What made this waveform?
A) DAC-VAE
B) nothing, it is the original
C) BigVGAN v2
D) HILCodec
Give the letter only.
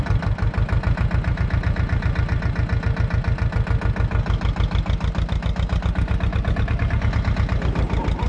B